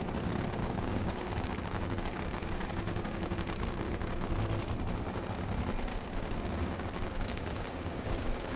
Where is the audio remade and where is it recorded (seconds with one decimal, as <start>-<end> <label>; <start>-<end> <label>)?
0.0-0.6 recorded; 0.6-4.3 remade; 4.3-5.9 recorded; 5.9-8.6 remade

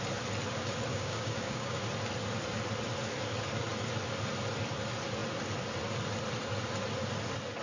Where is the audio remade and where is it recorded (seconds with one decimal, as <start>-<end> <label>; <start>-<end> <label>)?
0.0-0.9 recorded; 0.9-1.8 remade; 1.8-7.6 recorded